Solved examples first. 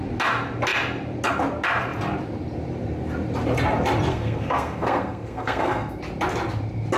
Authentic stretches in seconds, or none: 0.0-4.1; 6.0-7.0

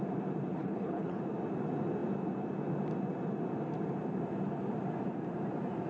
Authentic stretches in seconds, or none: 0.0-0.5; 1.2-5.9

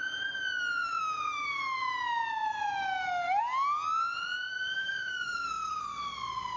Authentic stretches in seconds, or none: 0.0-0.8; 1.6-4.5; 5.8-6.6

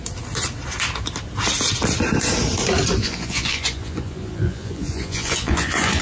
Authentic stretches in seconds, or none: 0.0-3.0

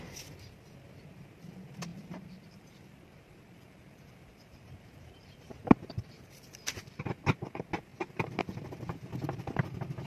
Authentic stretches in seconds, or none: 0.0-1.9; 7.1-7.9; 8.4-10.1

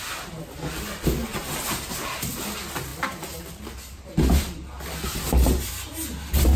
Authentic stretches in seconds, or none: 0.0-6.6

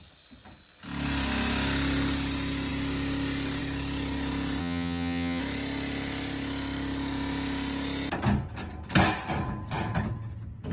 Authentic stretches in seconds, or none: 0.0-4.6; 5.4-10.7